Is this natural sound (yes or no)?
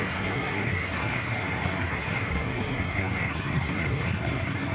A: no